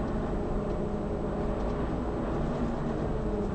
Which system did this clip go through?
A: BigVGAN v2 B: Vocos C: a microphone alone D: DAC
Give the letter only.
C